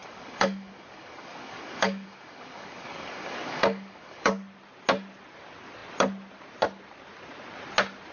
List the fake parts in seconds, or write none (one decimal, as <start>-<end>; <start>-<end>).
0.0-4.3